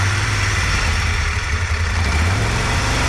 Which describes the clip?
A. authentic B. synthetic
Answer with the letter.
B